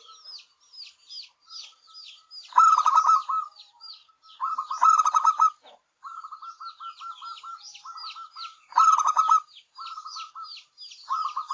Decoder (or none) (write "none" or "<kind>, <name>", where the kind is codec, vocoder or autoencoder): none